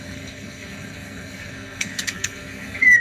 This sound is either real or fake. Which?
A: fake